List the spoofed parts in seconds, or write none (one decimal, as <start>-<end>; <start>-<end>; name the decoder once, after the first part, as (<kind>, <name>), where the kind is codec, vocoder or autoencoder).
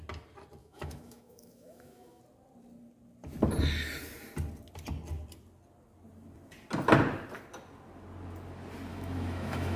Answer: 0.6-2.2 (autoencoder, DAC-VAE); 8.9-9.8